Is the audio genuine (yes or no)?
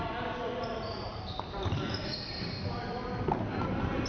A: yes